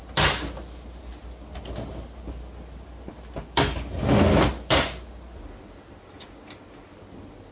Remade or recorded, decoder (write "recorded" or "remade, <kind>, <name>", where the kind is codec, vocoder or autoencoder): recorded